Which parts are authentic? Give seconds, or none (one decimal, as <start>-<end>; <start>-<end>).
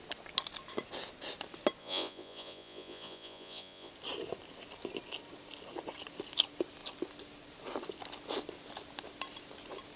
0.0-1.8; 3.9-10.0